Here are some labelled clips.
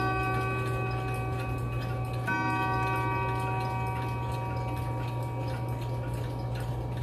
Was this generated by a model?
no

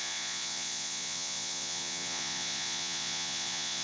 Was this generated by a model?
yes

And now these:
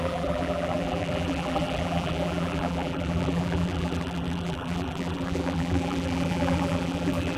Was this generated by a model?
yes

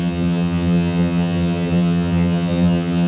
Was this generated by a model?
yes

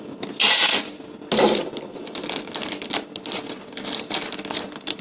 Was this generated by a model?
no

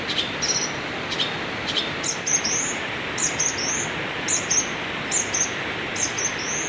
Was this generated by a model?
no